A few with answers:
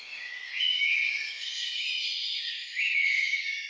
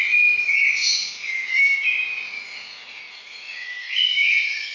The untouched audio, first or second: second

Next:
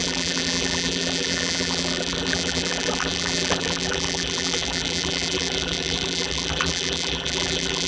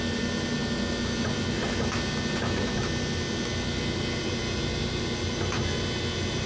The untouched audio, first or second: second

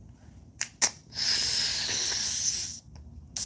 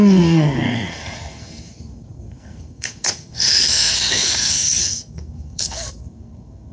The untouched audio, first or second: first